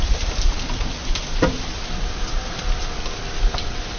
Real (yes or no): yes